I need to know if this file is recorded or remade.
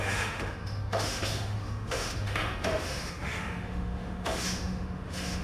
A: remade